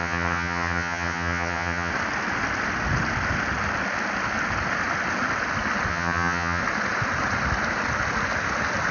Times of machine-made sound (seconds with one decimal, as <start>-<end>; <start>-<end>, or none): 0.0-1.9; 5.9-6.6